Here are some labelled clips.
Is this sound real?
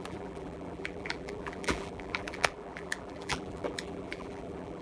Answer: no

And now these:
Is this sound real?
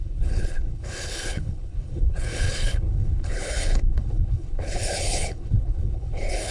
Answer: no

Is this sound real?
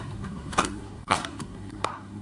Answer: no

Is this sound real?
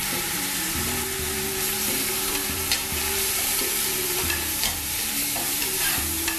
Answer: no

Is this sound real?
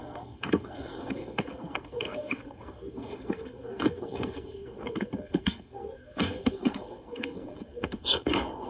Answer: no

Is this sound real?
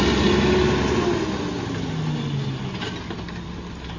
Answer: yes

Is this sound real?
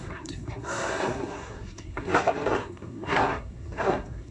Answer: no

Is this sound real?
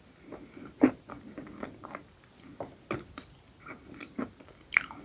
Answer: yes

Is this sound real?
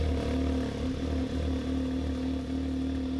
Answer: yes